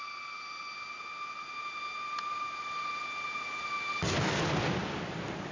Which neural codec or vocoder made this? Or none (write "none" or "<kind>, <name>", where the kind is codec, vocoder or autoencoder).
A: none